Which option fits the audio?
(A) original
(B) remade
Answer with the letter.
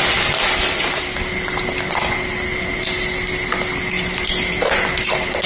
A